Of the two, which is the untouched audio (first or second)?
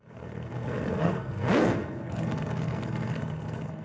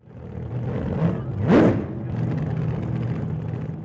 second